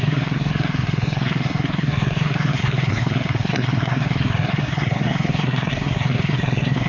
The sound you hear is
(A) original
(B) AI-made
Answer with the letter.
B